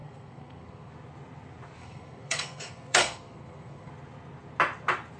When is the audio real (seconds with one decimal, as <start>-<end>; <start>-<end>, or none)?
0.9-1.8; 3.9-5.2